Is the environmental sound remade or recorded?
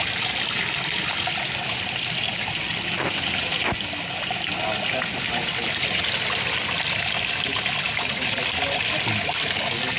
recorded